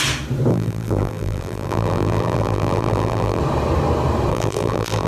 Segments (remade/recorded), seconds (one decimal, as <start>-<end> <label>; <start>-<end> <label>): 0.0-0.5 recorded; 0.5-3.4 remade; 3.4-4.3 recorded; 4.3-5.1 remade